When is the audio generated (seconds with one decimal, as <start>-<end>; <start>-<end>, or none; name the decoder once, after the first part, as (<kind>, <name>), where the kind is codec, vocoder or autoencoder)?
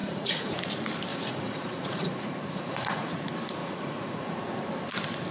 0.0-0.5 (vocoder, Vocos); 1.1-3.1; 3.6-4.4